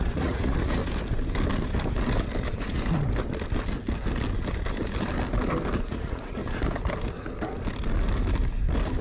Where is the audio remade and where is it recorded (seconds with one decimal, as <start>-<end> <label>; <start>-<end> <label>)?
0.0-0.8 remade; 0.8-5.8 recorded; 5.8-6.4 remade; 6.4-9.0 recorded